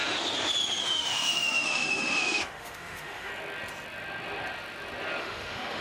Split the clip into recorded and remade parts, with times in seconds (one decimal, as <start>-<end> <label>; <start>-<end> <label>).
0.0-0.8 recorded; 0.8-3.3 remade; 3.3-5.2 recorded; 5.2-5.8 remade